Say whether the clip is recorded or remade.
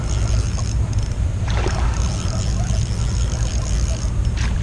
recorded